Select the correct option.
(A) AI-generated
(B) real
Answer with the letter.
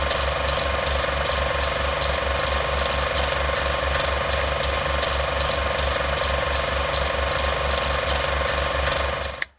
B